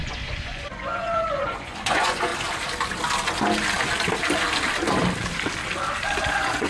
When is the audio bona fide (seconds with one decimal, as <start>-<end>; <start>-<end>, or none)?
2.3-6.3